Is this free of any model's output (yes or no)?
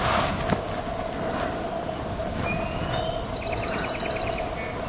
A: yes